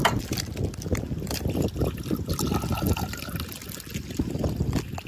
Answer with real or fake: real